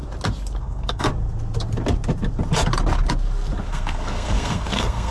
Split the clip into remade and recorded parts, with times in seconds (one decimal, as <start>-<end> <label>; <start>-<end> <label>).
0.0-0.6 recorded; 0.6-1.1 remade; 1.1-3.7 recorded; 3.7-5.1 remade